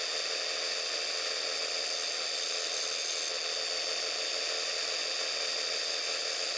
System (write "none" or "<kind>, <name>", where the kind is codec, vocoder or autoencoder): none